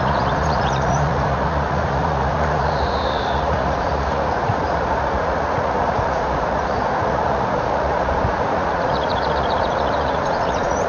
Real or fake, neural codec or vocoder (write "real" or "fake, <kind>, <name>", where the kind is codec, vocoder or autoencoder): fake, vocoder, Vocos